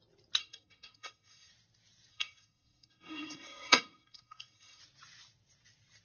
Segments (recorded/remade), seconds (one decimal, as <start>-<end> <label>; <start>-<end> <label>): 0.0-0.4 recorded; 0.4-1.5 remade; 1.5-2.1 recorded; 2.1-4.8 remade; 4.8-6.0 recorded